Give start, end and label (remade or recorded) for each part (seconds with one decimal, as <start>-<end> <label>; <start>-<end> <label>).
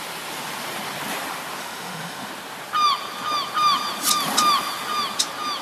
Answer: 0.0-1.6 recorded; 1.6-2.3 remade; 2.3-5.6 recorded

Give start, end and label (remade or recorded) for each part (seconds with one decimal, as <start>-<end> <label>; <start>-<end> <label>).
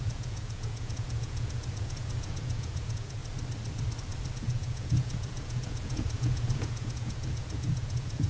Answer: 0.0-3.2 remade; 3.2-4.3 recorded; 4.3-8.3 remade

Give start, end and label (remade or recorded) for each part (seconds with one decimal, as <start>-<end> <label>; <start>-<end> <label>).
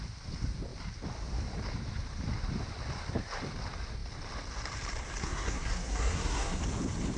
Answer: 0.0-5.2 recorded; 5.2-6.6 remade; 6.6-7.2 recorded